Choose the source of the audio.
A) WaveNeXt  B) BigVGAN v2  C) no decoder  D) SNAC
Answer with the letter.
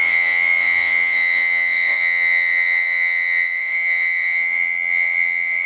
A